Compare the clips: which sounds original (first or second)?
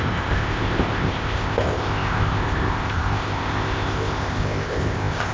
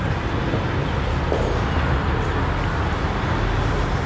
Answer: second